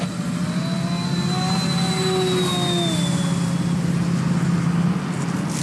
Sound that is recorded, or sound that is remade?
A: recorded